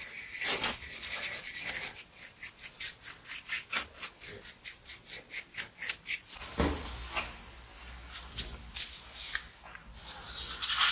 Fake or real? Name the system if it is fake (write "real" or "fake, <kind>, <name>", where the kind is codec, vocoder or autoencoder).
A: real